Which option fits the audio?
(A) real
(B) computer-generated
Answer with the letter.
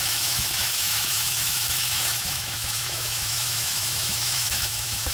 B